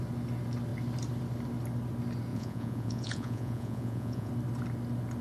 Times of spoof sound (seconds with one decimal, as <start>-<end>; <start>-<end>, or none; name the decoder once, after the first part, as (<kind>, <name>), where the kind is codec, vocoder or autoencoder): 2.3-4.3 (vocoder, Vocos)